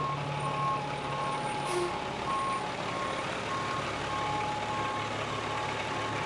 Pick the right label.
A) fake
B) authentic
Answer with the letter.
B